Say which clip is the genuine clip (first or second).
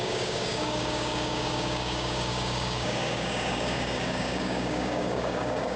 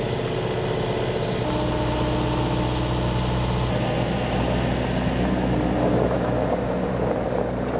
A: second